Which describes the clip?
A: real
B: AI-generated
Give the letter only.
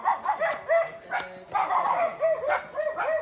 A